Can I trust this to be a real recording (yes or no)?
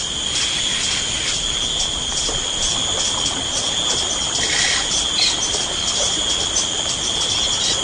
yes